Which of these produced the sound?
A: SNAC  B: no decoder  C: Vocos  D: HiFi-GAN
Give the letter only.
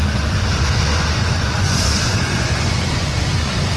C